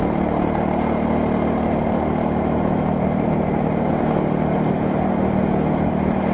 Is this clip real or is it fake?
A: real